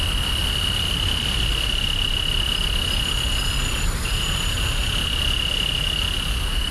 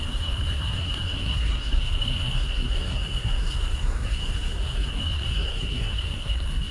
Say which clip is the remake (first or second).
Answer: second